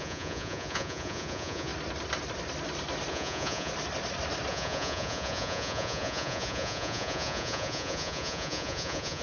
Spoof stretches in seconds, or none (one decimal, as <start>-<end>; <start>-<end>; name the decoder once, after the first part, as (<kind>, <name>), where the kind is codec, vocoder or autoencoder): 0.0-1.7 (vocoder, Vocos); 3.1-3.7; 4.5-9.2